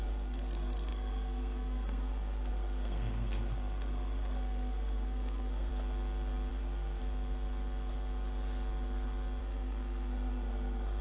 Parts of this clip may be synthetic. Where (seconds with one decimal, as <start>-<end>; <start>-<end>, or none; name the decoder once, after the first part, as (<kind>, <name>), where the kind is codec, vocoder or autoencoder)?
0.0-5.7 (codec, SNAC); 6.5-7.0; 9.4-11.0